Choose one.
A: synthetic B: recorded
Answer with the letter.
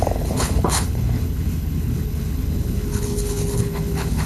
A